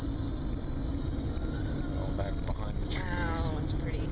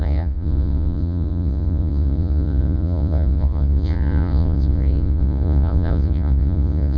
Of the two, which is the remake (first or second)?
second